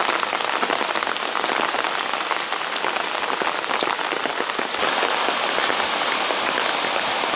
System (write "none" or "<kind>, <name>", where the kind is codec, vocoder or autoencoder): none